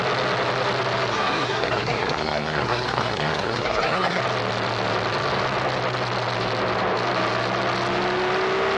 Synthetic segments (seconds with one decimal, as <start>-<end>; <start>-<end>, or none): 1.1-4.2